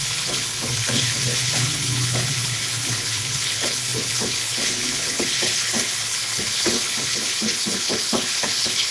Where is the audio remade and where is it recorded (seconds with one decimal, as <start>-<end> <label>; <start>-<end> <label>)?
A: 0.0-8.9 remade